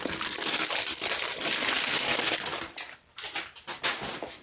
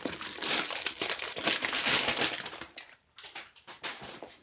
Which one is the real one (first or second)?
first